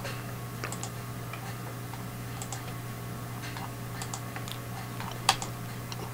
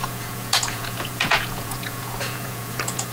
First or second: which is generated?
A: second